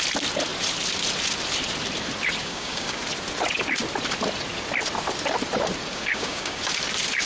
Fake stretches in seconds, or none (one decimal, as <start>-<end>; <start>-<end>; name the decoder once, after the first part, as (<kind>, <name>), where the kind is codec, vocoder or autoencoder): 2.4-3.0 (codec, DAC); 5.9-6.6